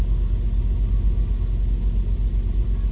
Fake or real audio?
real